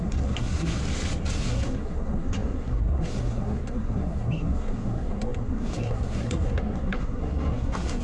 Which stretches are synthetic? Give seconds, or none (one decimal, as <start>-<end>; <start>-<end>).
0.0-0.8; 1.3-8.0